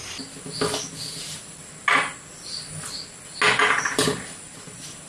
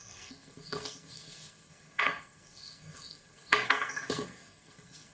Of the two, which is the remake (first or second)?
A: second